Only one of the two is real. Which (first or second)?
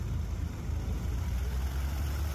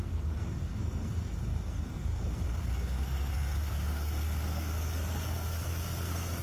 first